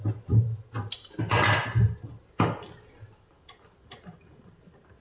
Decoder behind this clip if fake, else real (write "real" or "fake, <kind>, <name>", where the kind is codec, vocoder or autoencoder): real